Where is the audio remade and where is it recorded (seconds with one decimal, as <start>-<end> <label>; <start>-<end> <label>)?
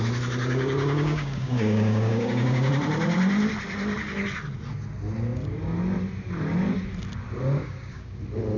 0.0-0.4 recorded; 0.4-2.7 remade; 2.7-7.6 recorded; 7.6-8.2 remade; 8.2-8.6 recorded